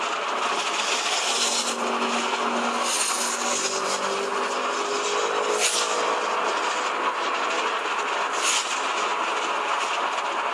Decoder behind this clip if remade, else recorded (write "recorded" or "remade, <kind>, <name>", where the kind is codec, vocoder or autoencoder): recorded